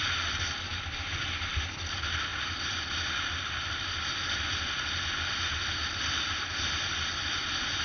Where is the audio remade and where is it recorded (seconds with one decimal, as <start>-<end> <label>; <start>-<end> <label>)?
0.0-7.8 recorded